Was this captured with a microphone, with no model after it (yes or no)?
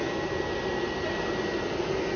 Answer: yes